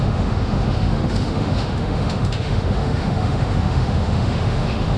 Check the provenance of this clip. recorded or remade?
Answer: remade